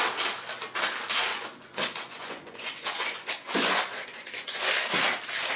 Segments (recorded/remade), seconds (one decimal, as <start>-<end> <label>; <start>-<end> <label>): 0.0-1.3 recorded; 1.3-4.7 remade; 4.7-5.6 recorded